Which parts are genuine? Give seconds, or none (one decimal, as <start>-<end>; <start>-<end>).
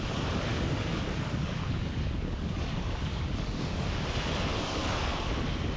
0.0-0.5; 4.0-4.5; 5.2-5.8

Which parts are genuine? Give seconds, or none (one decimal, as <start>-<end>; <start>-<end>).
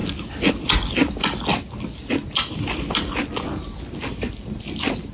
0.0-5.1